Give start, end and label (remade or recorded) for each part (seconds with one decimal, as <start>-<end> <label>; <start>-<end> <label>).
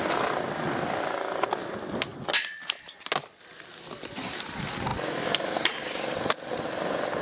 0.0-7.2 recorded